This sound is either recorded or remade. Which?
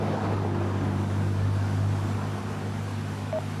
remade